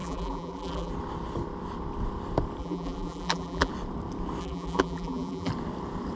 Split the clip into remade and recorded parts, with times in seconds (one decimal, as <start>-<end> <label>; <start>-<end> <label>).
0.0-0.9 remade; 0.9-2.6 recorded; 2.6-3.7 remade; 3.7-4.4 recorded; 4.4-5.5 remade; 5.5-6.2 recorded